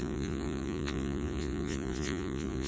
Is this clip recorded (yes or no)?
no